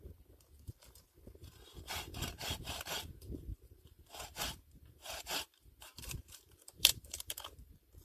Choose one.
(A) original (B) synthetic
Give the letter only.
B